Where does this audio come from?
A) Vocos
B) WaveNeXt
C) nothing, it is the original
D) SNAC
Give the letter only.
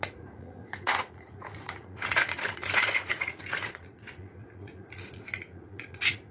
A